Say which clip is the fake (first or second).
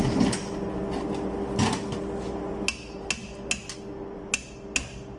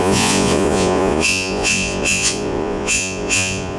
second